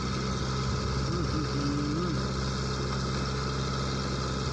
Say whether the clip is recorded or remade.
recorded